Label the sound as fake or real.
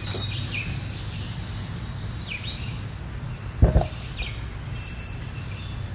real